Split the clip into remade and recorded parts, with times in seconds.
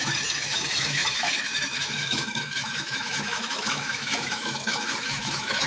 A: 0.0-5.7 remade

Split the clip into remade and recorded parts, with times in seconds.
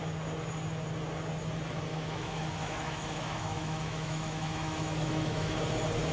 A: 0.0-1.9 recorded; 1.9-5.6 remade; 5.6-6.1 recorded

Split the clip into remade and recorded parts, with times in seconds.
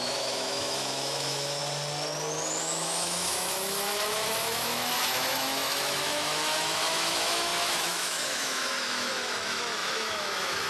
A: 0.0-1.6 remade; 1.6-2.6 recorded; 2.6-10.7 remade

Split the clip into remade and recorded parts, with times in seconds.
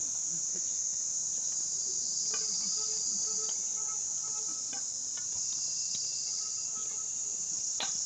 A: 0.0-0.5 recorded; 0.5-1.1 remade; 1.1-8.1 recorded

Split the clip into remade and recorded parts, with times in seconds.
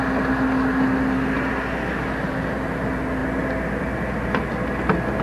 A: 0.0-5.2 recorded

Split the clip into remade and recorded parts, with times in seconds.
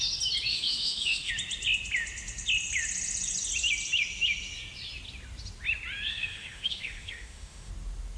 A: 0.0-0.5 recorded; 0.5-1.3 remade; 1.3-6.1 recorded; 6.1-7.7 remade; 7.7-8.2 recorded